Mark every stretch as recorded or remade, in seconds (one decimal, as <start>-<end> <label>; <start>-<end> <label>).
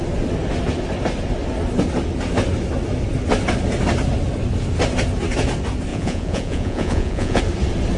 0.0-5.9 recorded; 5.9-7.4 remade; 7.4-8.0 recorded